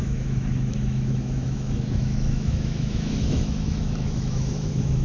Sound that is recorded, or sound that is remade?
remade